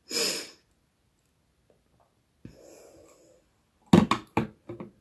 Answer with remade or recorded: recorded